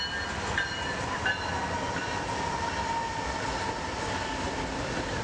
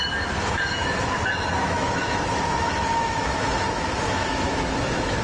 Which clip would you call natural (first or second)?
first